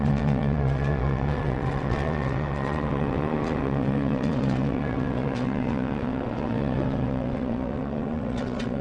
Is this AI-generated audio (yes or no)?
yes